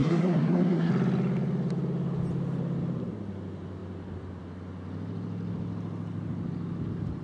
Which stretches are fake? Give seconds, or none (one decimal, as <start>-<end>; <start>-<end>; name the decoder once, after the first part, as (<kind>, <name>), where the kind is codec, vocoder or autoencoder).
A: 0.0-0.9 (codec, SNAC)